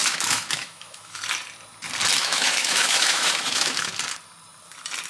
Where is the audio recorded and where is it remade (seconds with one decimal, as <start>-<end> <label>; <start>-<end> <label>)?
0.0-1.2 remade; 1.2-2.2 recorded; 2.2-3.9 remade; 3.9-5.1 recorded

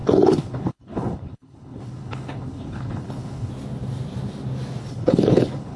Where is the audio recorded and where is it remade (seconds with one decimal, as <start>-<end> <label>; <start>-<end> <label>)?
0.0-3.5 remade; 3.5-4.8 recorded; 4.8-5.8 remade

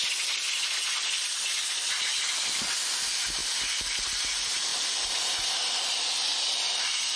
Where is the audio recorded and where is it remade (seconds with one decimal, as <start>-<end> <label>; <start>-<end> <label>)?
0.0-7.2 recorded

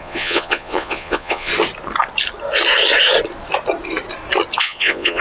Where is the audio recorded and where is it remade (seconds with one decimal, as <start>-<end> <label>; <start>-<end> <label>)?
0.0-1.5 remade; 1.5-4.6 recorded; 4.6-5.2 remade

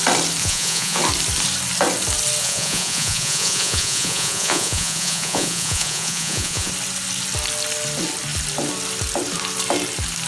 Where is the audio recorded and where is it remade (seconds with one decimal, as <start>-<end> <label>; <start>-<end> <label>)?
0.0-0.4 recorded; 0.4-1.0 remade; 1.0-2.4 recorded; 2.4-6.7 remade; 6.7-10.3 recorded